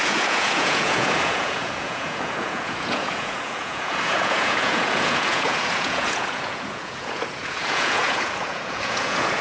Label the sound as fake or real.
fake